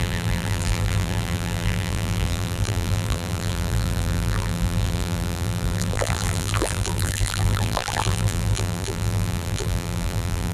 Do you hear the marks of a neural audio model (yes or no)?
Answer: yes